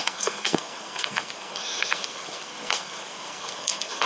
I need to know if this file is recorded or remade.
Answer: remade